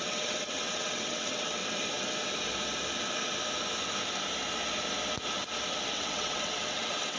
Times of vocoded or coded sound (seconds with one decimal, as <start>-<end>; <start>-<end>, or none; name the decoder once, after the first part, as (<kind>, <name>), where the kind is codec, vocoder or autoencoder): 0.0-1.6 (vocoder, WaveNeXt); 5.9-7.2